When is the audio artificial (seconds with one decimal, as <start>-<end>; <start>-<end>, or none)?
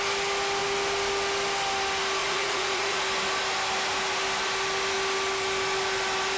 2.2-3.0